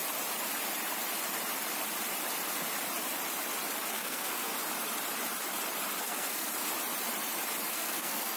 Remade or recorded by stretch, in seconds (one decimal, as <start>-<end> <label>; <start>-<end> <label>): 0.0-3.9 recorded; 3.9-4.5 remade; 4.5-6.0 recorded; 6.0-6.5 remade; 6.5-7.7 recorded; 7.7-8.4 remade